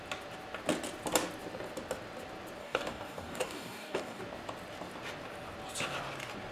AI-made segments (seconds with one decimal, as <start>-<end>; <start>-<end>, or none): 2.6-4.2